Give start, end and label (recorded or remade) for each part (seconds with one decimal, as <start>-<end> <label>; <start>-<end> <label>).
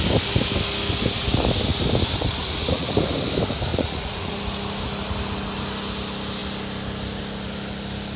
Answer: 0.0-2.4 recorded; 2.4-3.0 remade; 3.0-3.7 recorded; 3.7-4.4 remade; 4.4-8.2 recorded